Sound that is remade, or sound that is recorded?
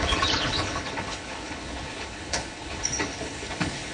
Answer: remade